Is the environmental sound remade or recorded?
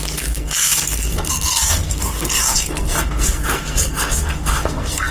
remade